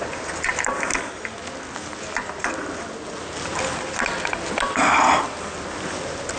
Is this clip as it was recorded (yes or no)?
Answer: yes